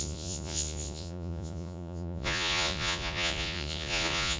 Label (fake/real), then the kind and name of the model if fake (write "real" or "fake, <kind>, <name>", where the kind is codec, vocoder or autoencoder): fake, vocoder, Vocos